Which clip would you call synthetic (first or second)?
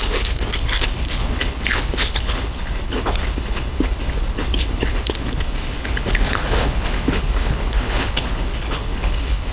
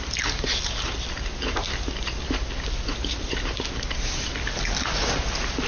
first